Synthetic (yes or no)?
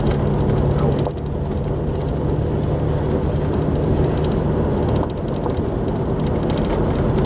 no